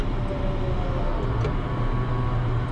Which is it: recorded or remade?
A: recorded